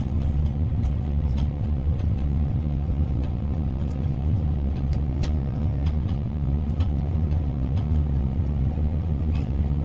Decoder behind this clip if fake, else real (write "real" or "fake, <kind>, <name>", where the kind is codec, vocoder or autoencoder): fake, vocoder, WaveNeXt